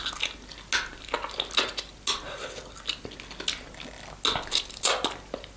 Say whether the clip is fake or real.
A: real